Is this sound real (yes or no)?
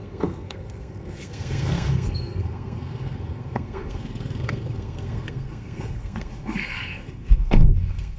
no